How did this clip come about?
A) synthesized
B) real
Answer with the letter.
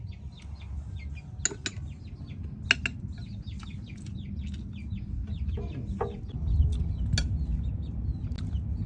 B